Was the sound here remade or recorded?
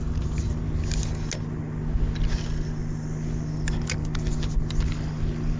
recorded